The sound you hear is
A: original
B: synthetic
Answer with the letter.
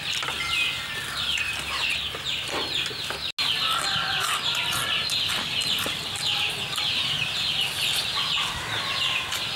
A